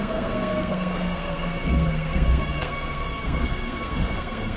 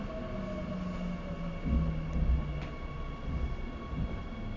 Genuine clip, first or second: second